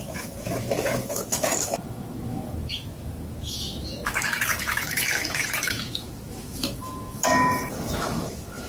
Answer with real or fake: fake